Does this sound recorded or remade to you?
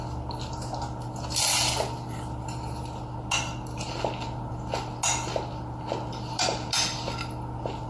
recorded